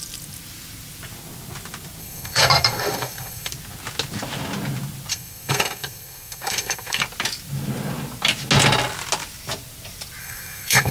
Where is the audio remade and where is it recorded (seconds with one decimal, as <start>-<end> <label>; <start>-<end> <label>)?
0.0-2.0 recorded; 2.0-3.5 remade; 3.5-5.1 recorded; 5.1-7.0 remade; 7.0-10.2 recorded; 10.2-10.9 remade